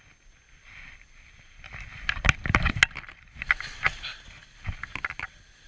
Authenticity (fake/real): real